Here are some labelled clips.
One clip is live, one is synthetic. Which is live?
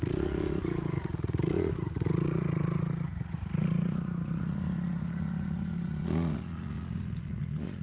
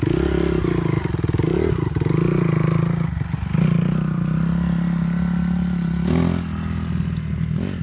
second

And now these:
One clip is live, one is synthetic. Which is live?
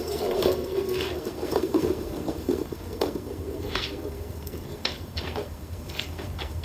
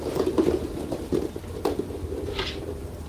second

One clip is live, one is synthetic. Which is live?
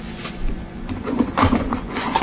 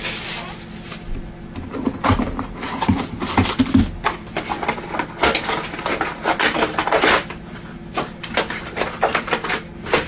second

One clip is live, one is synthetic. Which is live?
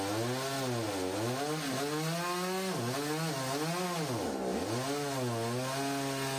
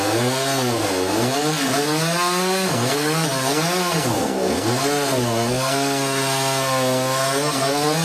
first